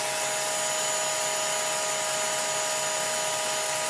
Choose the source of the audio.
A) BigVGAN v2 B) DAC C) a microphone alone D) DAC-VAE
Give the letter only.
C